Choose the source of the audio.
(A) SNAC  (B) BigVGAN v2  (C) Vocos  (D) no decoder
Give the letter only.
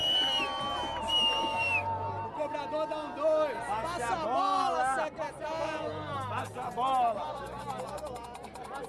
D